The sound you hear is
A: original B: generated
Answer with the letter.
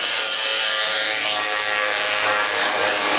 B